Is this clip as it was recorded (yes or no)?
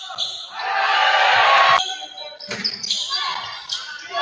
yes